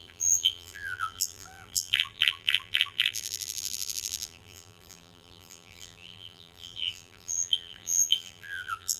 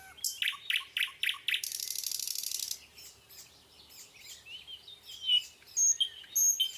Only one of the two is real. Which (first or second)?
second